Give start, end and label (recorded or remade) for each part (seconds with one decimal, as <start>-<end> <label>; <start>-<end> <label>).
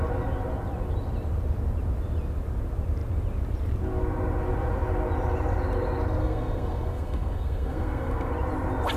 0.0-6.2 recorded; 6.2-8.3 remade; 8.3-9.0 recorded